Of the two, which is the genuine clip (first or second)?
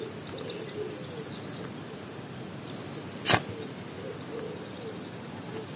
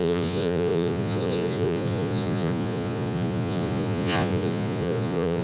first